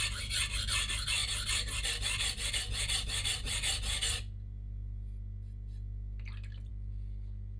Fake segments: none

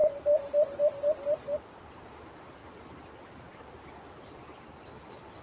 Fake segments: none

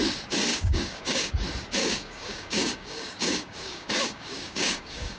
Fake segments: 0.5-1.3 (codec, DAC); 1.8-5.2

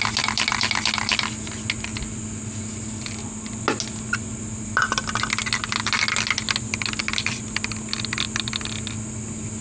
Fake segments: none